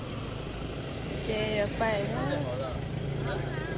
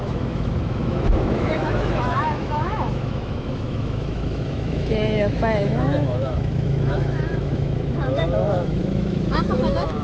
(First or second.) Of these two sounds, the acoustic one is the first